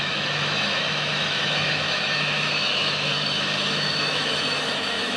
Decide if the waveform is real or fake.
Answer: fake